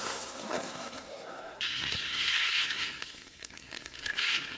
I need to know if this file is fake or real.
fake